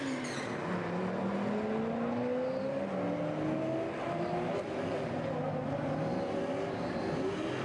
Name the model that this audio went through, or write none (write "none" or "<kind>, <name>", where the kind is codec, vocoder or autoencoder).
none